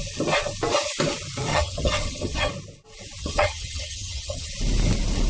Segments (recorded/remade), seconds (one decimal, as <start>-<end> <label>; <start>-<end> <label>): 0.0-1.5 recorded; 1.5-2.5 remade; 2.5-3.2 recorded; 3.2-4.5 remade; 4.5-5.3 recorded